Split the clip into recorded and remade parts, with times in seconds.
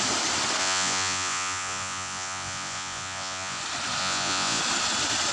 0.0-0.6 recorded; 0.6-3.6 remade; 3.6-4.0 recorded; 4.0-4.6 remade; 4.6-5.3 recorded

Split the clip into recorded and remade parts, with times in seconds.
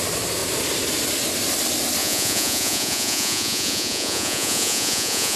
0.0-2.0 recorded; 2.0-5.4 remade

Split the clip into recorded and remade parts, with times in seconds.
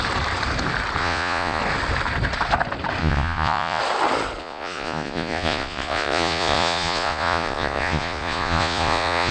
0.0-1.0 recorded; 1.0-1.6 remade; 1.6-3.0 recorded; 3.0-3.8 remade; 3.8-4.4 recorded; 4.4-9.3 remade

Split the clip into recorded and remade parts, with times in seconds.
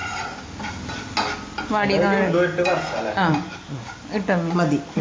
0.0-5.0 recorded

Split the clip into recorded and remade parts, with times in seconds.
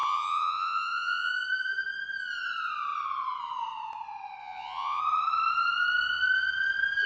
0.0-1.3 remade; 1.3-4.4 recorded; 4.4-5.0 remade; 5.0-7.1 recorded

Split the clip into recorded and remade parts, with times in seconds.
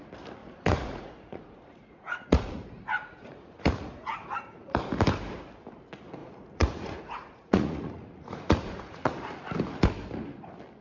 0.0-0.4 recorded; 0.4-4.8 remade; 4.8-6.2 recorded; 6.2-9.1 remade; 9.1-10.8 recorded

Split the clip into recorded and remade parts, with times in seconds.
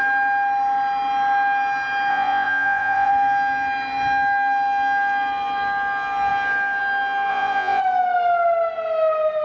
0.0-2.1 recorded; 2.1-3.1 remade; 3.1-7.3 recorded; 7.3-7.8 remade; 7.8-9.4 recorded